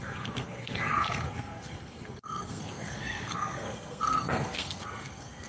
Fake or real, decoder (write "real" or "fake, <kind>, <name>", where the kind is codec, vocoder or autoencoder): fake, codec, SNAC